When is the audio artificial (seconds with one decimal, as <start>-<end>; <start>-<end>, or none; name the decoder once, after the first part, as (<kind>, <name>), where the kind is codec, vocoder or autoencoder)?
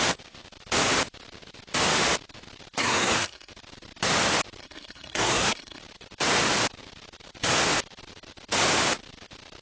2.8-3.5 (codec, SNAC); 4.6-5.8